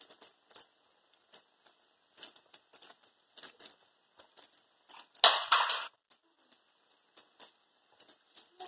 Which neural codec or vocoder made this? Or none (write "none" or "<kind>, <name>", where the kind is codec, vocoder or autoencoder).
none